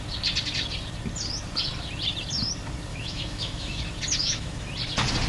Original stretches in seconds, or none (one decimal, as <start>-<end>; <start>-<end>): 0.0-2.9; 3.8-4.2; 4.7-5.3